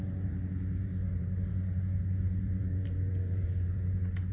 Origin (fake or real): fake